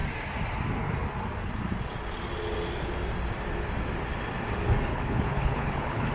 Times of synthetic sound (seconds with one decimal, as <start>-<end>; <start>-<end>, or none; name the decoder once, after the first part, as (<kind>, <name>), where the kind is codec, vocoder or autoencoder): 4.9-6.1 (codec, HILCodec)